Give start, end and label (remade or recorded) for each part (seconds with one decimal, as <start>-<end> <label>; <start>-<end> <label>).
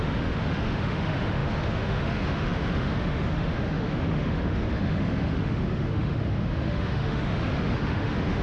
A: 0.0-8.4 remade